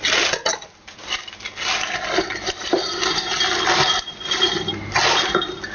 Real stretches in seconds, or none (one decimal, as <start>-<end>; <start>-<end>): 0.0-5.7